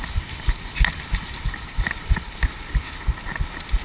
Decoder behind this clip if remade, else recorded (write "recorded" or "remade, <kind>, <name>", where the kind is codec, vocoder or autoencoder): recorded